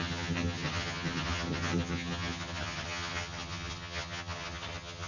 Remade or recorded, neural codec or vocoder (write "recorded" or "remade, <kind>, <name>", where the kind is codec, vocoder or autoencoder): remade, vocoder, HiFi-GAN